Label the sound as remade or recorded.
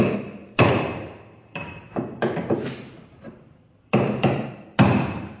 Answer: remade